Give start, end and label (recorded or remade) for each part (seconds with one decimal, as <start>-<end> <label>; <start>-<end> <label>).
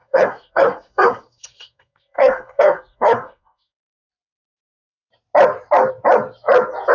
0.0-4.1 remade; 4.1-6.9 recorded